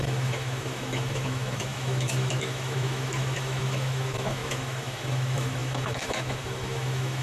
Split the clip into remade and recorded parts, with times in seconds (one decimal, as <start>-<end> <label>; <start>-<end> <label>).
0.0-7.2 remade